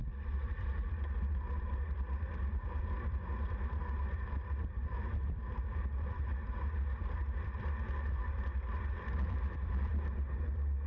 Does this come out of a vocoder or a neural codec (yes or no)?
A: yes